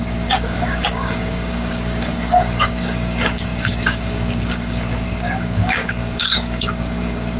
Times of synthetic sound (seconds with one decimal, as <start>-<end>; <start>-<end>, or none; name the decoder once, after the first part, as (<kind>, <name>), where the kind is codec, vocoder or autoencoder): 0.0-7.4 (codec, DAC)